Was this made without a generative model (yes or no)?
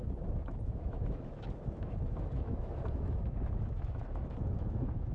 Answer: no